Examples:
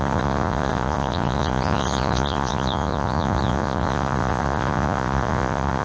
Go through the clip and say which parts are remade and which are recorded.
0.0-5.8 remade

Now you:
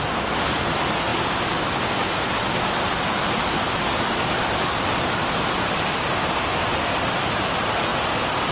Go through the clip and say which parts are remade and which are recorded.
0.0-8.5 recorded

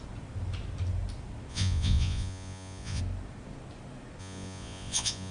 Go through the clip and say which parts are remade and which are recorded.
0.0-1.5 recorded; 1.5-3.0 remade; 3.0-4.2 recorded; 4.2-5.3 remade

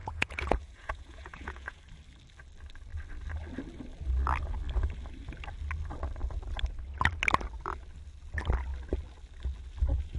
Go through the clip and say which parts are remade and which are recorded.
0.0-1.8 remade; 1.8-10.2 recorded

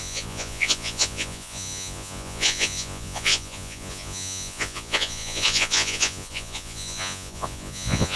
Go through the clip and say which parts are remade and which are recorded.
0.0-8.2 remade

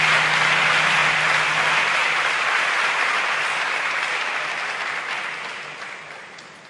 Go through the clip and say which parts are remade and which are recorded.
0.0-6.7 recorded

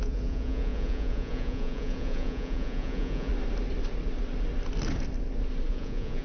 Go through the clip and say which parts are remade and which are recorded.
0.0-3.3 remade; 3.3-5.7 recorded; 5.7-6.2 remade